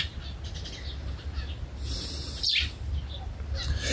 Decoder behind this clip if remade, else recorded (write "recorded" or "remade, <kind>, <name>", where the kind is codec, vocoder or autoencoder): recorded